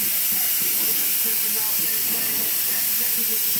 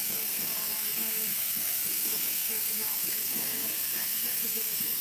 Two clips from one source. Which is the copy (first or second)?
second